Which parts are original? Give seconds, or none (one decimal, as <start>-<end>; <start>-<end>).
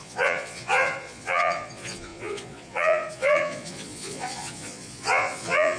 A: none